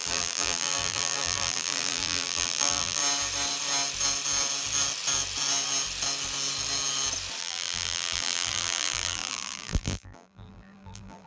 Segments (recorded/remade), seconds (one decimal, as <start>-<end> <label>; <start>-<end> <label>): 0.0-3.0 remade; 3.0-7.4 recorded; 7.4-11.3 remade